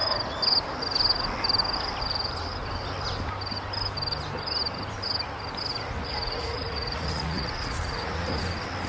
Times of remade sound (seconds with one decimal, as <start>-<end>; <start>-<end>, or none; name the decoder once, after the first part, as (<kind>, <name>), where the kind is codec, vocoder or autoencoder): 6.0-8.4 (vocoder, Vocos)